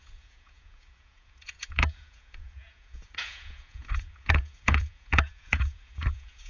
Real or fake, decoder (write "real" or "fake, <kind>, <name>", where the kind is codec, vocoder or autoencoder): fake, vocoder, Vocos